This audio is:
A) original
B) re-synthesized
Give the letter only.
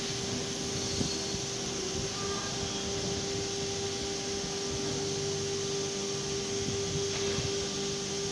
A